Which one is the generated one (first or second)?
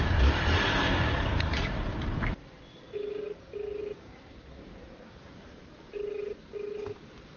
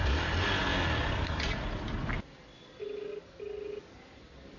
first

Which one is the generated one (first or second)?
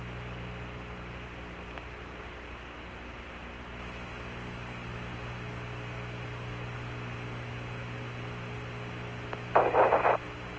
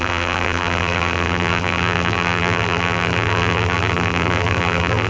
second